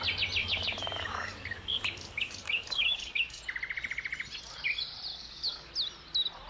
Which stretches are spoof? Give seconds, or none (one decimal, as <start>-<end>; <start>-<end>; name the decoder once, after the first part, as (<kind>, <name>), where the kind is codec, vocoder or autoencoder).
0.4-3.4 (codec, DAC); 5.1-5.7